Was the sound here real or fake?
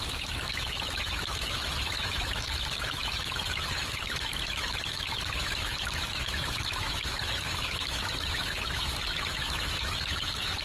fake